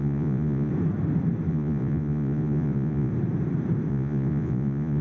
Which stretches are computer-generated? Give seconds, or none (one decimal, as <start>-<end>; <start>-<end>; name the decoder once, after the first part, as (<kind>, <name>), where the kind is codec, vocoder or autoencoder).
0.0-0.7 (vocoder, Vocos); 1.5-3.1; 3.9-5.0